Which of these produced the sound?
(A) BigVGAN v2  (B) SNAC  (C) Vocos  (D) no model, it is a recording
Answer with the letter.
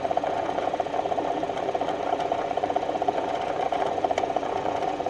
C